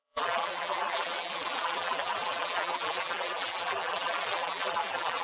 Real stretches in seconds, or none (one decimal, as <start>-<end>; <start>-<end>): none